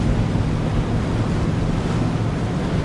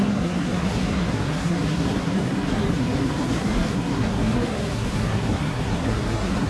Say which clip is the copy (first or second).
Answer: second